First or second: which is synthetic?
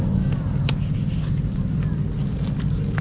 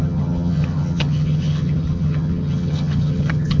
second